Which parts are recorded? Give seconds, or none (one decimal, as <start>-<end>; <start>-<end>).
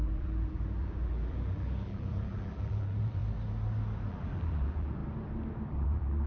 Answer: 3.2-4.1; 5.0-5.7